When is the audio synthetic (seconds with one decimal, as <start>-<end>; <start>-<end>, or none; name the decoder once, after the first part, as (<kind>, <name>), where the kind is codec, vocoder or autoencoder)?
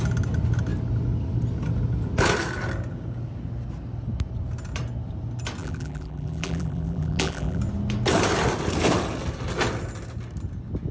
5.6-7.6 (vocoder, BigVGAN v2)